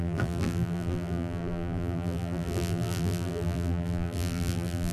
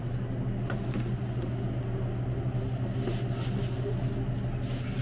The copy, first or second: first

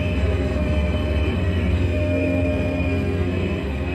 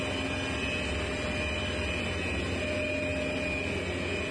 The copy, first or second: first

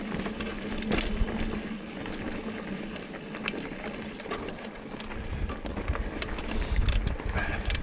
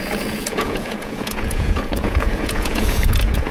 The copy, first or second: second